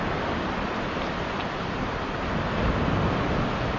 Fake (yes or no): no